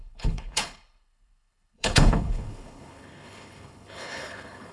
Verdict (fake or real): fake